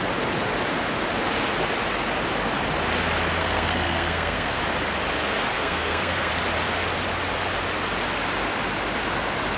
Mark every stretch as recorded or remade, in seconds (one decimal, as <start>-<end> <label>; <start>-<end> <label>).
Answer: 0.0-3.4 recorded; 3.4-4.6 remade; 4.6-5.5 recorded; 5.5-6.3 remade; 6.3-9.6 recorded